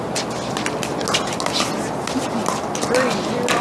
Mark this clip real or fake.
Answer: real